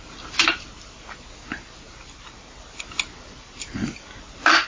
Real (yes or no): yes